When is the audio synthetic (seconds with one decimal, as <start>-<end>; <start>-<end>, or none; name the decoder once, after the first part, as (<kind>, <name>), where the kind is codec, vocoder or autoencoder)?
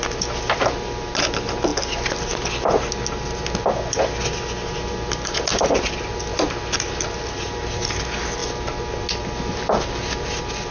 none